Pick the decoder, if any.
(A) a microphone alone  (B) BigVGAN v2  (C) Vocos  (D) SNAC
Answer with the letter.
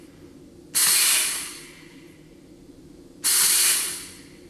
A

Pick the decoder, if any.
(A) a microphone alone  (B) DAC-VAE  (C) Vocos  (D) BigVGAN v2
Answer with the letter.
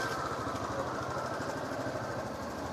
A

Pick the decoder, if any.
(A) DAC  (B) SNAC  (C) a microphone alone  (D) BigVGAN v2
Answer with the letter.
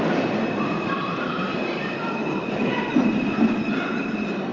D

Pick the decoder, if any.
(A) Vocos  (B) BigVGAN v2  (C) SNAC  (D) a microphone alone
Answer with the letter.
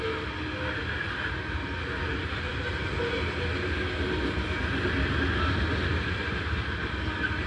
D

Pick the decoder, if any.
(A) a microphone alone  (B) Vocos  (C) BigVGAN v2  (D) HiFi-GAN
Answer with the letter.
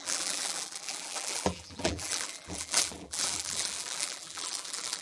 C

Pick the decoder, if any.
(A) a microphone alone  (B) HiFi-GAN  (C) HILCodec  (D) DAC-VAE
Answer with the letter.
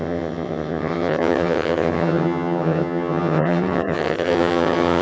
B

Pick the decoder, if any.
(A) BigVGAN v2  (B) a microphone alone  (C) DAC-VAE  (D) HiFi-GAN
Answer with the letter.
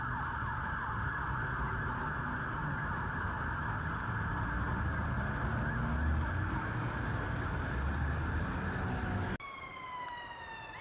B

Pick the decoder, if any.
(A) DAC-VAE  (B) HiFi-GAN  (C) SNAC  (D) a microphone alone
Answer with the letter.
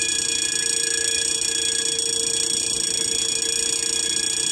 D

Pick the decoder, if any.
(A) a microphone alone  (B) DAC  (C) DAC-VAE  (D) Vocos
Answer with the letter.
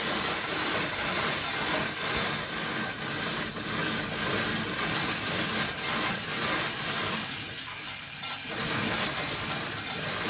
A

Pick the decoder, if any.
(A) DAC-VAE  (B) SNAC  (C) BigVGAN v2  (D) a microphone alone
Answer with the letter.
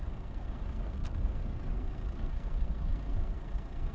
B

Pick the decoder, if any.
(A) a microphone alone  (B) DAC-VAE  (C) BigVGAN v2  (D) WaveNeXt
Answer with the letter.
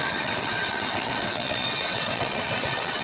D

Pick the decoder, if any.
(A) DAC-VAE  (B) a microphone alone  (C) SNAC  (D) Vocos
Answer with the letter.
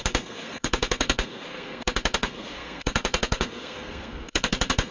C